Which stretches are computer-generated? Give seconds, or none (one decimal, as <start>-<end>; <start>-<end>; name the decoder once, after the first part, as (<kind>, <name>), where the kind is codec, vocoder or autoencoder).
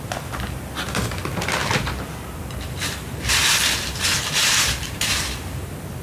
1.6-5.2 (vocoder, BigVGAN v2)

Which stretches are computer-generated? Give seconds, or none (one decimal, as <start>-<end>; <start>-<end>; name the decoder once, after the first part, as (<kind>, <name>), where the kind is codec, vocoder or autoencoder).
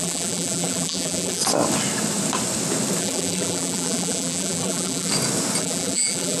0.0-1.4 (vocoder, BigVGAN v2); 3.0-5.1; 5.6-6.4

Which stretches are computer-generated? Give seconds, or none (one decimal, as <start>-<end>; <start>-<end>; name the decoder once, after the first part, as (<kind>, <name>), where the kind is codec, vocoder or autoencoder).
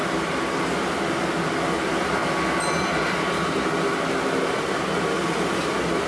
none